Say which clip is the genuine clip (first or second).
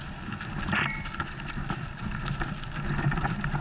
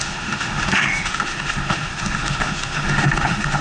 first